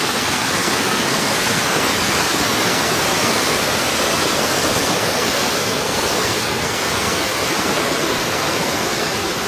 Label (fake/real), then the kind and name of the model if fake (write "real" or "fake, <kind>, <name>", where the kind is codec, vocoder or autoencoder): fake, codec, SNAC